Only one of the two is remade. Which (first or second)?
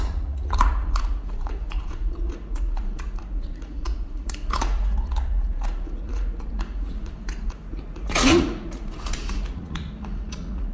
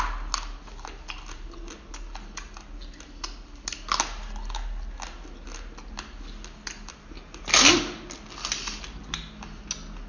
first